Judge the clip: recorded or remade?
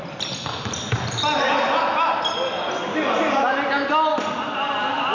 recorded